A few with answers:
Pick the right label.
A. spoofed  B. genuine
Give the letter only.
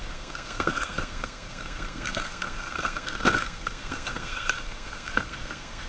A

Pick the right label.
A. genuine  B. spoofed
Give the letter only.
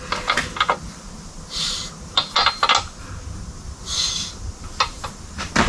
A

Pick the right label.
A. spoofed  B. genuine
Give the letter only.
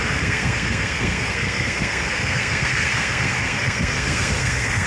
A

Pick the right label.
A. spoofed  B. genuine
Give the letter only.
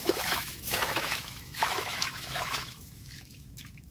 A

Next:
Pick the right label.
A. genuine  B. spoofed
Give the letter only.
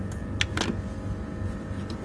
A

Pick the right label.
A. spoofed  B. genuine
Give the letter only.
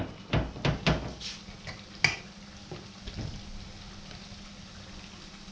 B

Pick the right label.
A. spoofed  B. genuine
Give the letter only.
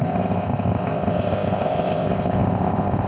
A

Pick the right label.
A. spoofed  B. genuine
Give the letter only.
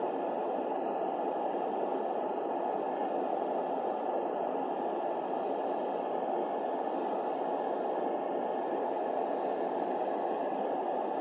B